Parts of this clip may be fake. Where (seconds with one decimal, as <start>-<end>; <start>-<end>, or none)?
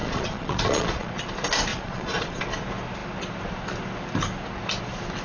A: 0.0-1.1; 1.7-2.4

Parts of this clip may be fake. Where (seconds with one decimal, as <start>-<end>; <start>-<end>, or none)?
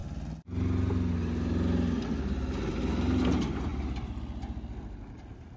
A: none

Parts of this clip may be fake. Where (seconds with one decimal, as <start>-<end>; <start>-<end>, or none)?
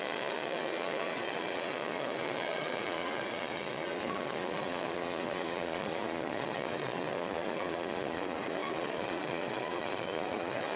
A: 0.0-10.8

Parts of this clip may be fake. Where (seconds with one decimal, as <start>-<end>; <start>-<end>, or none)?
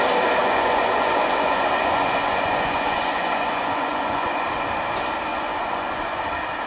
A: 0.4-4.4; 5.3-6.2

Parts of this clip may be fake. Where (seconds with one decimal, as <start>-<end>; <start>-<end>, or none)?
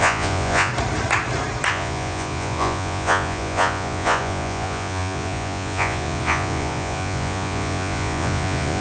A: 0.0-0.7; 1.7-8.8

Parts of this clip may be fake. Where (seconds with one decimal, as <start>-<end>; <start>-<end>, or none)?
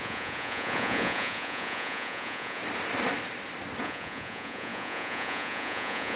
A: 0.0-2.6; 3.8-6.2